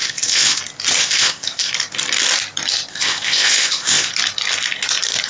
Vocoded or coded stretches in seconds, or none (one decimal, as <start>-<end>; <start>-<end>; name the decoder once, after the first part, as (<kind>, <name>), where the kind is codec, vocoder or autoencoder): 0.0-0.6 (codec, ZipCodec); 1.0-1.7; 2.9-4.1

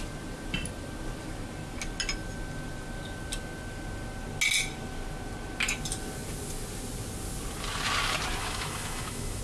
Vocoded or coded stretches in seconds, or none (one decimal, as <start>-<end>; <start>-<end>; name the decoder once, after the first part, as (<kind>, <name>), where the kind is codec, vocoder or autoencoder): 8.4-9.4 (autoencoder, DAC-VAE)

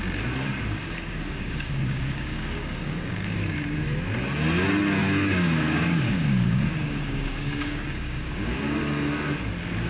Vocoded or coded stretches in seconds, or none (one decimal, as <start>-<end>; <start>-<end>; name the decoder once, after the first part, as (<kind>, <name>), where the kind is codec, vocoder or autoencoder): 0.8-3.6 (codec, DAC); 5.0-8.8

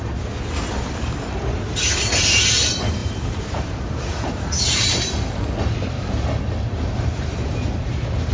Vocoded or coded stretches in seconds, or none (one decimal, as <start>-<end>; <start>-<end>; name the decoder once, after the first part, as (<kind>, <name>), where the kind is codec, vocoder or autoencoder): 3.0-5.1 (vocoder, BigVGAN v2)

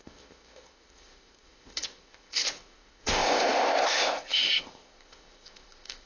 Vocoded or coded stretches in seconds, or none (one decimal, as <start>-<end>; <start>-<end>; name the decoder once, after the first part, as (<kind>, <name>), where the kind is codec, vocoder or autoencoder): 0.0-6.1 (codec, ZipCodec)

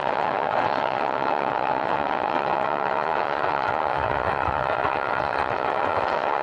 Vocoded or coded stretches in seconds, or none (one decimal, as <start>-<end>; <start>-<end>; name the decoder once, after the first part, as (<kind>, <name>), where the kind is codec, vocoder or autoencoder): 0.0-6.4 (vocoder, WaveNeXt)